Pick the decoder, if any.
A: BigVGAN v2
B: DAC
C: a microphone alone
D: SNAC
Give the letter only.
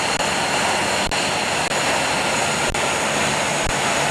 C